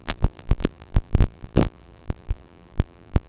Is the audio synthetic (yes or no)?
yes